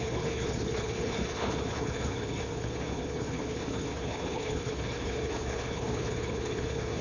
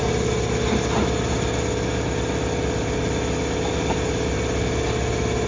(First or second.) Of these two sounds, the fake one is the first